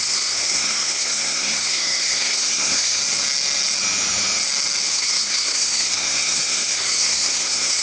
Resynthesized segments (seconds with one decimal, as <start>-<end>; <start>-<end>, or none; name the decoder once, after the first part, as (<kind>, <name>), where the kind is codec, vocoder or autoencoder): 0.0-3.0 (codec, SNAC); 4.9-7.8

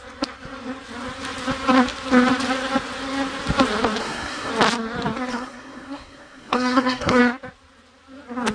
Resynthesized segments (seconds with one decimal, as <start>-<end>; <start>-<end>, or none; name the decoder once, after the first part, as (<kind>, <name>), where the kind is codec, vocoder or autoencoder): 4.0-4.5 (codec, SNAC); 5.3-7.2

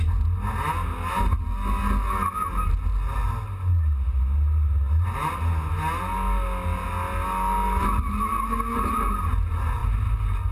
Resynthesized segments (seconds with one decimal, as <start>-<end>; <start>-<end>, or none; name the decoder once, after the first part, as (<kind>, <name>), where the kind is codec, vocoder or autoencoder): none

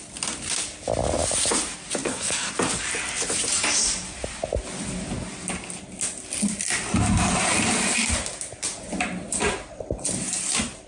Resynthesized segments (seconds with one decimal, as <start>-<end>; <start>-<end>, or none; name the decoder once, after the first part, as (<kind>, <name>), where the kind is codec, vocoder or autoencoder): 2.0-2.5 (codec, SNAC)

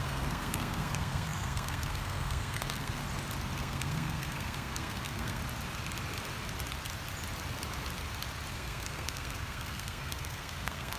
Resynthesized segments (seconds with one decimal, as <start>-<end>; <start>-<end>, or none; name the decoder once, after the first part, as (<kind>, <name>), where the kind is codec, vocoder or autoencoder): 0.0-3.0 (codec, SNAC); 3.6-5.4; 8.5-11.0

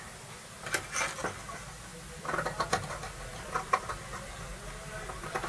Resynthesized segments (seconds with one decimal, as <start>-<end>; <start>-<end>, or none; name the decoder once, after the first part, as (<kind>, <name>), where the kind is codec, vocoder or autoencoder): none

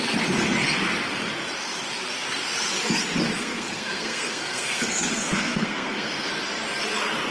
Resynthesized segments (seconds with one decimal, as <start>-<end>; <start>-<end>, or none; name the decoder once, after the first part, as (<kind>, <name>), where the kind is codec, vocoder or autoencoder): 3.4-6.3 (codec, SNAC)

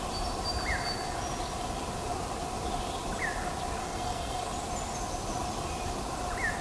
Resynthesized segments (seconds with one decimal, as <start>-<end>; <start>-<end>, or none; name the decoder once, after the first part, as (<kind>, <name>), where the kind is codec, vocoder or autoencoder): 3.8-4.4 (codec, SNAC)